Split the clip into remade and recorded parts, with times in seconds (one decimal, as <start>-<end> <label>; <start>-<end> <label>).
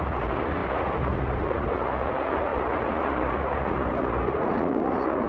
0.0-5.3 remade